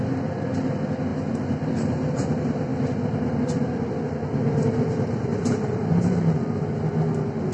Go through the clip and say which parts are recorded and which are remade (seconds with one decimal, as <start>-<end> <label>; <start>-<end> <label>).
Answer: 0.0-5.3 recorded; 5.3-6.7 remade; 6.7-7.5 recorded